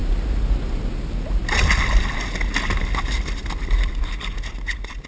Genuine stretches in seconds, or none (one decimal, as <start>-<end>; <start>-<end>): 0.0-5.1